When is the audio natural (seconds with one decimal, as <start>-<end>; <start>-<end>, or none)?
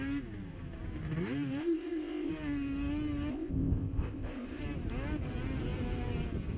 0.0-1.6; 2.3-3.3; 4.6-6.6